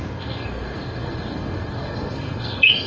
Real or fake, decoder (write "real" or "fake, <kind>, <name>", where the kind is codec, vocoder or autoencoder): fake, codec, SNAC